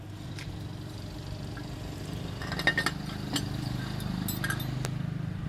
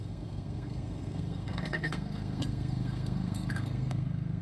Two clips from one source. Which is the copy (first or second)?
second